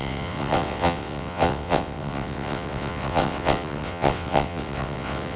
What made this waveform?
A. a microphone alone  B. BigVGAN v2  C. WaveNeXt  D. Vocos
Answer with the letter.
C